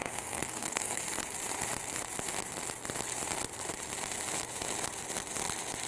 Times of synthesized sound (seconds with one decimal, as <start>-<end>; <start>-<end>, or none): 0.0-1.0